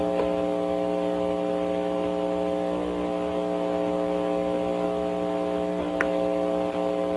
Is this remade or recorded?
recorded